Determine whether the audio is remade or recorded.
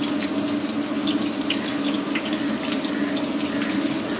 recorded